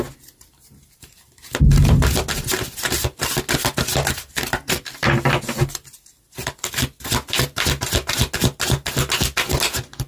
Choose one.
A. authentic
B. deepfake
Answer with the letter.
A